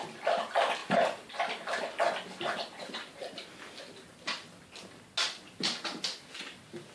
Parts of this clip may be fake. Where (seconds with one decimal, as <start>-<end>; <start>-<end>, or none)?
none